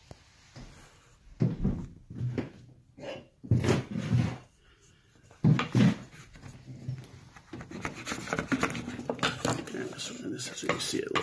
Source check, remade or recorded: recorded